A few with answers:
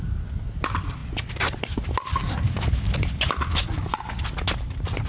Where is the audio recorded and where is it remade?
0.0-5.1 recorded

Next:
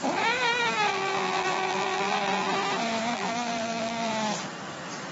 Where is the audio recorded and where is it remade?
0.0-0.9 recorded; 0.9-2.5 remade; 2.5-3.1 recorded; 3.1-4.1 remade; 4.1-5.1 recorded

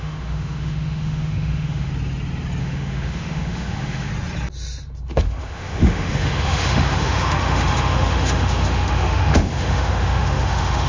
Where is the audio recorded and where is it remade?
0.0-1.9 remade; 1.9-2.6 recorded; 2.6-4.1 remade; 4.1-5.1 recorded; 5.1-10.9 remade

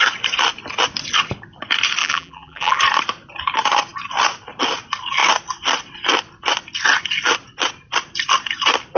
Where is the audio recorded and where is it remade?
0.0-2.0 recorded; 2.0-2.8 remade; 2.8-9.0 recorded

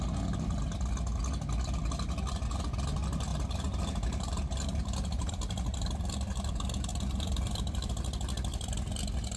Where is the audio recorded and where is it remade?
0.0-3.3 recorded; 3.3-5.3 remade; 5.3-6.9 recorded; 6.9-7.9 remade; 7.9-9.4 recorded

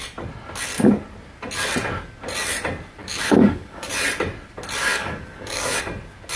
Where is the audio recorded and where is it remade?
0.0-3.0 recorded; 3.0-3.9 remade; 3.9-4.8 recorded; 4.8-5.8 remade; 5.8-6.4 recorded

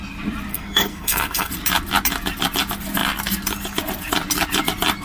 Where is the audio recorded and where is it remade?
0.0-0.5 recorded; 0.5-1.5 remade; 1.5-5.0 recorded